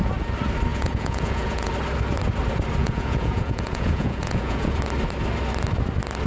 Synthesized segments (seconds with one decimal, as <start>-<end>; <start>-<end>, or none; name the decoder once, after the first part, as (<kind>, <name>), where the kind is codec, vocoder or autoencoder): 0.7-1.7 (vocoder, Vocos); 2.8-4.8